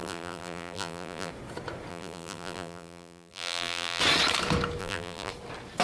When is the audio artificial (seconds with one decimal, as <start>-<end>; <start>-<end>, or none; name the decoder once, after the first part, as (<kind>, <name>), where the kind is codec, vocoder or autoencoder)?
0.0-1.3 (vocoder, BigVGAN v2); 1.9-4.0; 4.8-5.3